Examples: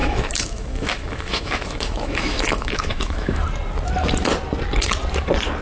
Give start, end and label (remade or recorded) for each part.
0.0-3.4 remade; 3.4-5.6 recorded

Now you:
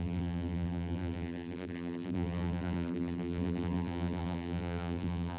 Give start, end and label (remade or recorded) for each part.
0.0-5.4 remade

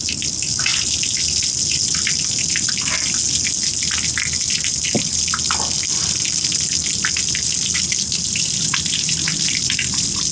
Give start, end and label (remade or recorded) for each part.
0.0-10.3 recorded

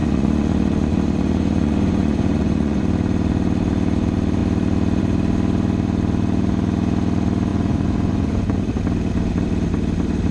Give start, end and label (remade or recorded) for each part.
0.0-2.8 remade; 2.8-7.5 recorded; 7.5-8.7 remade; 8.7-10.3 recorded